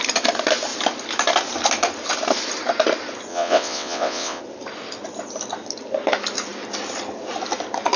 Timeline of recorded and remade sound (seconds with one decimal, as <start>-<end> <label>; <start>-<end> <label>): 0.0-3.3 recorded; 3.3-4.4 remade; 4.4-8.0 recorded